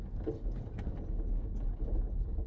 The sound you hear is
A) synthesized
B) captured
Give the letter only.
B